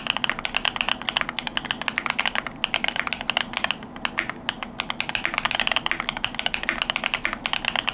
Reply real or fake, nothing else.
real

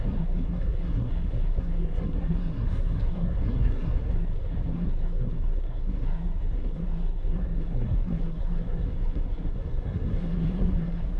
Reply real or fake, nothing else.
fake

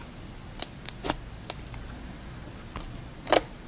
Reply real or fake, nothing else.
real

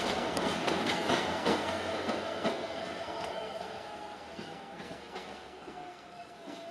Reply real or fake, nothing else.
fake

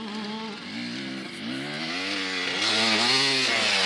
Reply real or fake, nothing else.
real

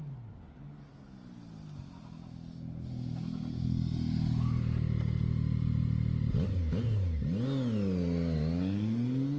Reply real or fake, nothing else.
real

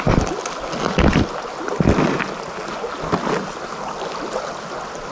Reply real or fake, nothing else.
real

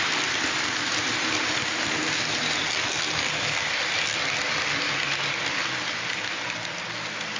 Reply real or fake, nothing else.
real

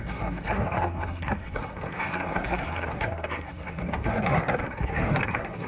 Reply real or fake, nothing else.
fake